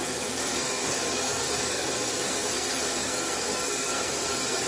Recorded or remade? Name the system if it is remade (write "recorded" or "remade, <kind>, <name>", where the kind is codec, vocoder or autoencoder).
remade, codec, SNAC